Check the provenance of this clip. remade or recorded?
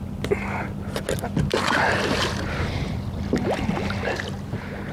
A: recorded